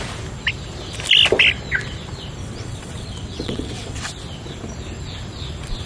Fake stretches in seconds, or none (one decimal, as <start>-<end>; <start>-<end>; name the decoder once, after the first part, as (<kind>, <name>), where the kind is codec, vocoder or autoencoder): 2.4-4.1 (vocoder, WaveNeXt)